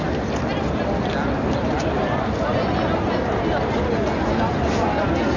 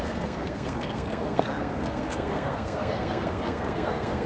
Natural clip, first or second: first